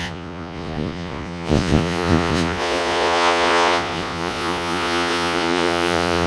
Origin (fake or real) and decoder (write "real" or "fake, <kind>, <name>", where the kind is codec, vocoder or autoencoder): fake, vocoder, Vocos